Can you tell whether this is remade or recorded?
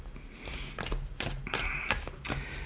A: recorded